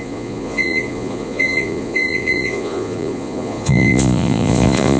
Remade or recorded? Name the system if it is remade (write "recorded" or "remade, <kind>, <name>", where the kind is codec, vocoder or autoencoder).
remade, vocoder, Vocos